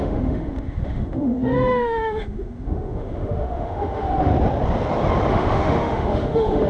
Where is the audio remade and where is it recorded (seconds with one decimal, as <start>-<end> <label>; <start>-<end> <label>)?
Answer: 0.0-4.3 remade; 4.3-5.3 recorded; 5.3-6.7 remade